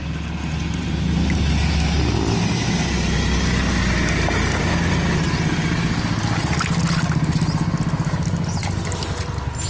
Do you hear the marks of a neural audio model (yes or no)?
no